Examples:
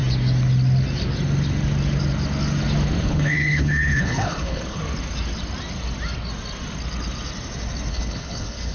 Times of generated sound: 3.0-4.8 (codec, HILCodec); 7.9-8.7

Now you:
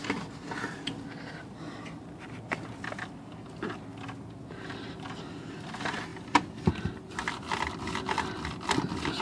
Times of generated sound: none

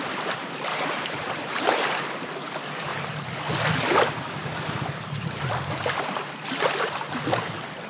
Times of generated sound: 0.7-1.3 (vocoder, BigVGAN v2); 4.4-5.5

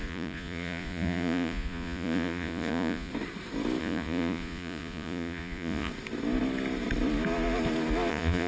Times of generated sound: 0.0-3.1 (vocoder, Vocos); 3.8-5.9; 8.1-8.5

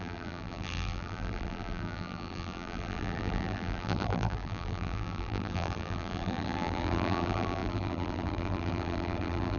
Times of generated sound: 0.0-9.6 (vocoder, BigVGAN v2)